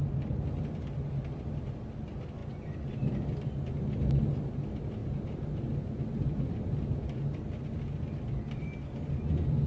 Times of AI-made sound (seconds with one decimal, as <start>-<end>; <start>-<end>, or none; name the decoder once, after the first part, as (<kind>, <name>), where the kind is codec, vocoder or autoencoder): 5.0-7.2 (vocoder, BigVGAN v2)

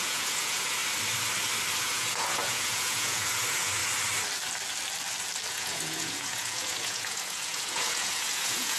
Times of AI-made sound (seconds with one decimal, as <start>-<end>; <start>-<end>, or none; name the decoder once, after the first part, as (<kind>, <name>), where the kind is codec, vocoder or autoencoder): 0.0-0.8 (vocoder, Vocos); 1.8-3.8; 5.5-8.8

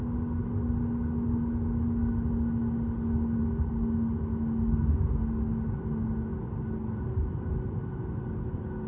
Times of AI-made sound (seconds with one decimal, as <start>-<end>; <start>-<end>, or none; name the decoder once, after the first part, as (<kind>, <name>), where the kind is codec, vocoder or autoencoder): none

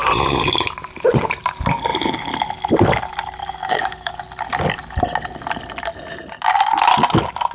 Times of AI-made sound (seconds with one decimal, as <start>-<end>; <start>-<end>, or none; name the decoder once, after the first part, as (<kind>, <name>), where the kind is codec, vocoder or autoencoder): 3.4-4.2 (codec, DAC)

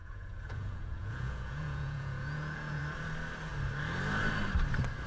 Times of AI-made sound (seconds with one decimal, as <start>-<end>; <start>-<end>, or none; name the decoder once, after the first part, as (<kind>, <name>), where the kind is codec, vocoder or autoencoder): 0.0-2.8 (vocoder, Vocos)

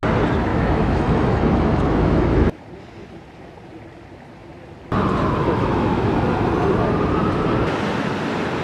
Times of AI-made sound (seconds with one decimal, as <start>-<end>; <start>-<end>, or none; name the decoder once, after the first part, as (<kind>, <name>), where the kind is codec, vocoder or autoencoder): 0.5-2.6 (autoencoder, DAC-VAE); 5.4-6.1

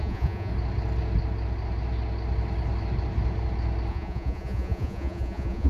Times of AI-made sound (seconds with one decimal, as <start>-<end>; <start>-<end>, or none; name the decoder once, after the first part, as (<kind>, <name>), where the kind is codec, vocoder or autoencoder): 0.0-0.5 (vocoder, Vocos); 3.9-5.7

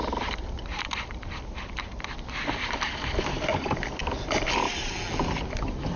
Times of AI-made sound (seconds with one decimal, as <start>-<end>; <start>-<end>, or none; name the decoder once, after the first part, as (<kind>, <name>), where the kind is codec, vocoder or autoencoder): none